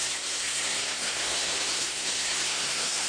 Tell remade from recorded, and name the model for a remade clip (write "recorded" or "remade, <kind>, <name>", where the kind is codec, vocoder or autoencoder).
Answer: remade, codec, SNAC